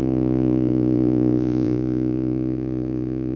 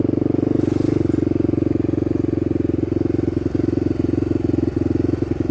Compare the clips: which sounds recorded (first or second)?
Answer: second